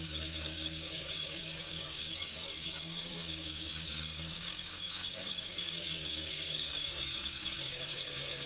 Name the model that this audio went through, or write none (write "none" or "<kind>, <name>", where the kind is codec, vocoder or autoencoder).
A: codec, DAC